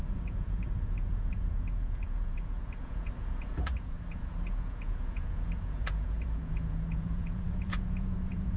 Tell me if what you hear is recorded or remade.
remade